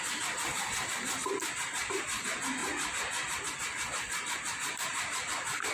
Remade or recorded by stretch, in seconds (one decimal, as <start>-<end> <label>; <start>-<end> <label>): 0.0-5.7 recorded